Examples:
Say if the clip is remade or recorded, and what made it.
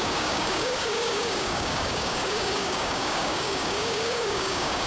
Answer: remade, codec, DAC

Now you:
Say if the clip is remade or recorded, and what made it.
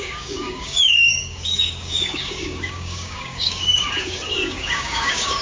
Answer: remade, codec, DAC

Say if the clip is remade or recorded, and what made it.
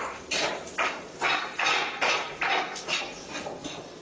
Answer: recorded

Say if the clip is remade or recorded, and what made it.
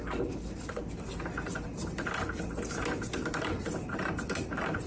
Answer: recorded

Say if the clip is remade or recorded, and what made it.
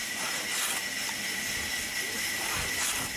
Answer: recorded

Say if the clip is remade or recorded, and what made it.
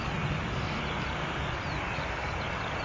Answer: recorded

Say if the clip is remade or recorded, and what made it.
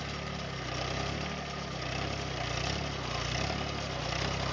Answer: recorded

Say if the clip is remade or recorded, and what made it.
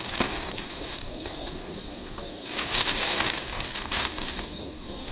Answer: remade, codec, DAC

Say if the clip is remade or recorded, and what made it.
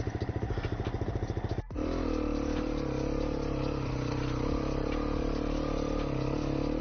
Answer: recorded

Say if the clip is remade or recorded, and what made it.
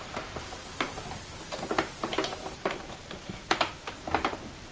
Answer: recorded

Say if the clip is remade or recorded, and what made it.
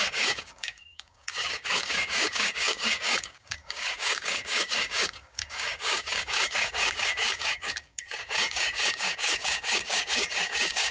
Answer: remade, codec, DAC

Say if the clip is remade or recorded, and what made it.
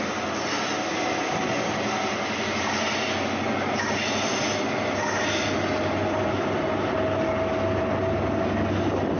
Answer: recorded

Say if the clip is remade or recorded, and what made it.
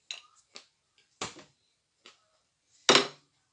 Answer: recorded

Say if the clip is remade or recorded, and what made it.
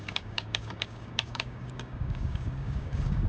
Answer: remade, codec, DAC